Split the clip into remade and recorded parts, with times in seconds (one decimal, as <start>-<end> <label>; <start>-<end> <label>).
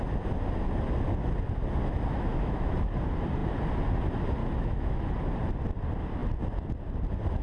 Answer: 0.0-2.3 recorded; 2.3-2.9 remade; 2.9-4.4 recorded; 4.4-5.0 remade; 5.0-7.4 recorded